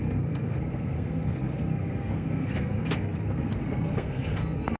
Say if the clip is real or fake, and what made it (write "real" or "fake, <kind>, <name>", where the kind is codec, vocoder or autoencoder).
fake, codec, SNAC